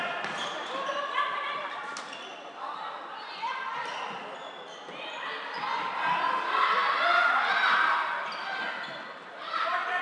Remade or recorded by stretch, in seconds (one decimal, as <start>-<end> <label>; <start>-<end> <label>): 0.0-10.0 recorded